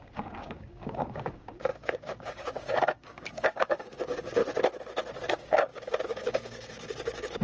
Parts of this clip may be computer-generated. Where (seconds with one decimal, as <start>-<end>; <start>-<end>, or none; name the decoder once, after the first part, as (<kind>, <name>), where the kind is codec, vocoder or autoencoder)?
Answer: 0.0-4.4 (codec, DAC); 5.2-7.4